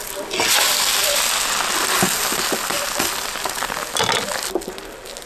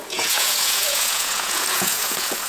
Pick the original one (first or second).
first